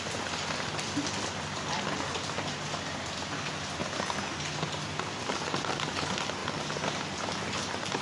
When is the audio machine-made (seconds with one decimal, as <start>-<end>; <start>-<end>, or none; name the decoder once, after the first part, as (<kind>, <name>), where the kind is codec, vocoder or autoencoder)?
none